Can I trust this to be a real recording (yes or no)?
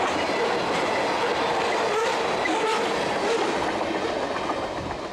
yes